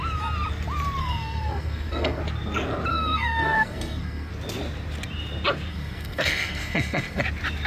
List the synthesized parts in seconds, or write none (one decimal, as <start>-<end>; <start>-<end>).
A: 1.0-2.2; 2.9-4.3; 5.7-7.2